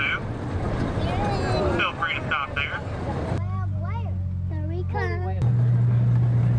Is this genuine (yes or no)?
yes